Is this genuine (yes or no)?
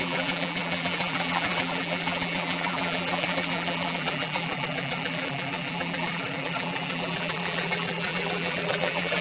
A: no